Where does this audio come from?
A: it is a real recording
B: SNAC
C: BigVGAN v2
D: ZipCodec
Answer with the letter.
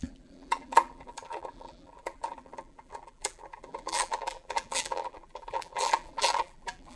C